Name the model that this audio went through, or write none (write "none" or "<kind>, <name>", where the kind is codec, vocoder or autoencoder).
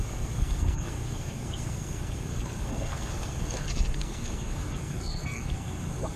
codec, SNAC